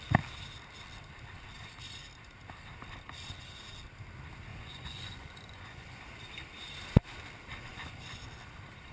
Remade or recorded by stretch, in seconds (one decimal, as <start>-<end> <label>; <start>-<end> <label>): 0.0-4.5 recorded; 4.5-6.0 remade; 6.0-7.7 recorded; 7.7-8.2 remade; 8.2-8.9 recorded